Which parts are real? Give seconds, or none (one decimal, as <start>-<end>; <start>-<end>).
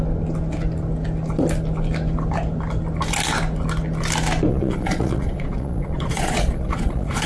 0.0-4.5